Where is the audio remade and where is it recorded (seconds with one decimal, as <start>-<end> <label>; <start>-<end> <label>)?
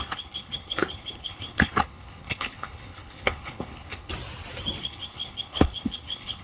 0.0-4.1 remade; 4.1-4.8 recorded; 4.8-6.4 remade